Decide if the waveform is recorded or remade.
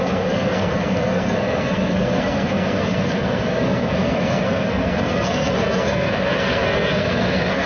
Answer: remade